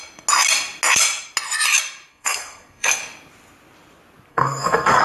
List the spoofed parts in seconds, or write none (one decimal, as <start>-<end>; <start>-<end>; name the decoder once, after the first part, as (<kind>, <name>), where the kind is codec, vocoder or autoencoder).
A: 2.1-3.0 (codec, SNAC); 4.3-5.0